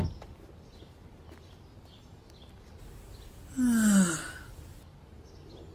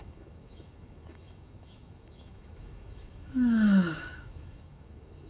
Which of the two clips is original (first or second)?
first